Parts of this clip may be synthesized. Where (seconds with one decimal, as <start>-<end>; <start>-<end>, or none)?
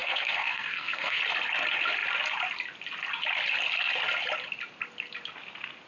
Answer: 0.0-1.2